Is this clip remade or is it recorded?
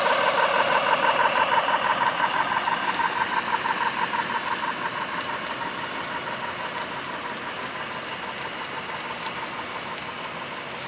recorded